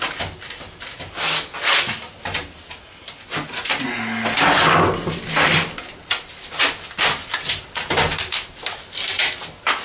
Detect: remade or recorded recorded